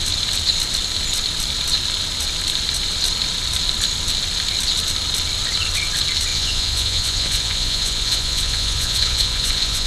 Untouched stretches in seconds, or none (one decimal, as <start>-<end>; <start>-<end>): 0.0-6.3